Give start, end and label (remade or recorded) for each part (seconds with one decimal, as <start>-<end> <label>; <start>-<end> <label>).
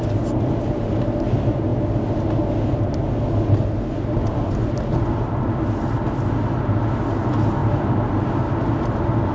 0.0-9.3 recorded